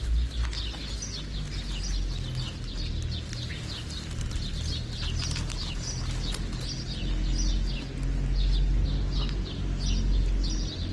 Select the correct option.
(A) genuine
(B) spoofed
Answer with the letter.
A